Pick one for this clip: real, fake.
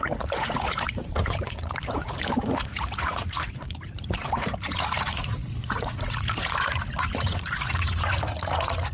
fake